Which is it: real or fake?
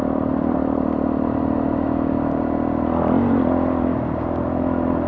real